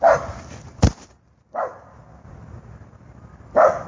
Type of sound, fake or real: real